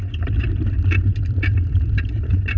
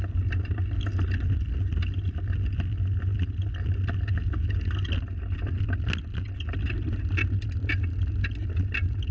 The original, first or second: second